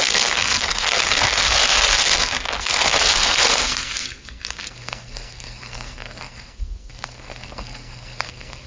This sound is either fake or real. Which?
fake